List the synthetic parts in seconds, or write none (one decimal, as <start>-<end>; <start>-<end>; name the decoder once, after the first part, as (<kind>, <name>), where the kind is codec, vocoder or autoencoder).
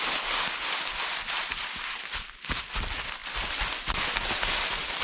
none